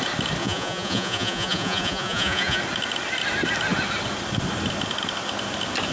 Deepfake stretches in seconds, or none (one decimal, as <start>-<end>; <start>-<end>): 0.4-2.6